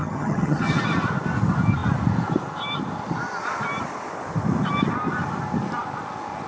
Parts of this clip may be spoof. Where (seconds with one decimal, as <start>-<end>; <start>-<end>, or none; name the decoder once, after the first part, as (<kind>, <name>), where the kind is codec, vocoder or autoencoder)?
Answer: 0.0-0.8 (vocoder, HiFi-GAN)